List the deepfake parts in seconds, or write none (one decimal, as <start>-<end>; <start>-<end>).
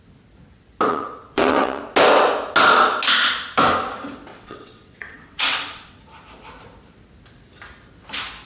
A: 0.9-1.8; 4.3-6.0